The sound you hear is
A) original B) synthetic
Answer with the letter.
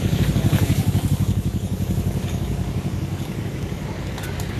B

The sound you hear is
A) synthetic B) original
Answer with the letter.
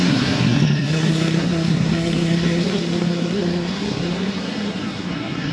A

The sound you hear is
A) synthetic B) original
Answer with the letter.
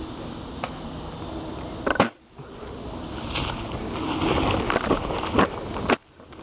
B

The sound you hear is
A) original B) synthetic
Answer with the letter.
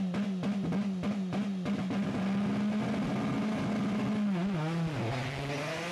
A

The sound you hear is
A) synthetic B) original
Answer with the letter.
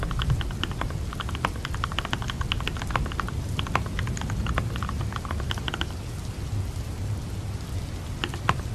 B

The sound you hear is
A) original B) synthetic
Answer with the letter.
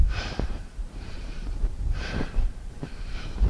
B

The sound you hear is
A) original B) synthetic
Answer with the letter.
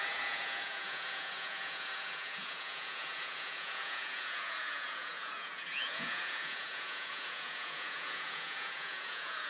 B